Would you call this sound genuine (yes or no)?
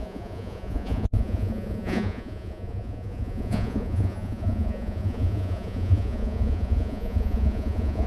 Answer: no